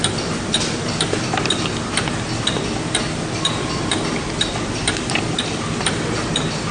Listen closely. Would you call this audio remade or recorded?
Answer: remade